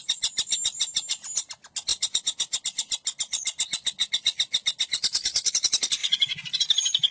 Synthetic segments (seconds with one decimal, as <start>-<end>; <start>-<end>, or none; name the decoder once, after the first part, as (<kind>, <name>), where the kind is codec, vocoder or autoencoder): 1.9-2.6 (vocoder, Vocos); 6.0-6.6